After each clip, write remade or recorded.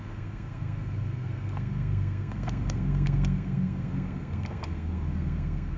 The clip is remade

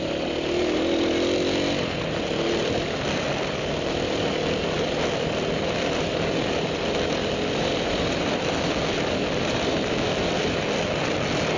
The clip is recorded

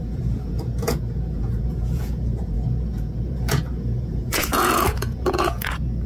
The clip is remade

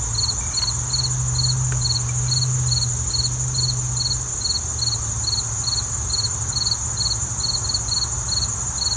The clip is recorded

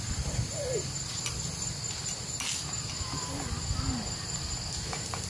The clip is recorded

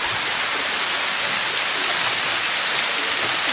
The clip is recorded